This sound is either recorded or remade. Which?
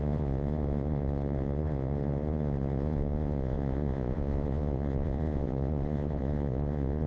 remade